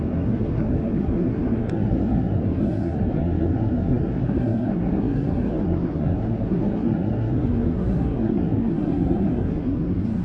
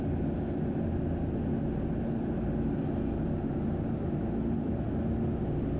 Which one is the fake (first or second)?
first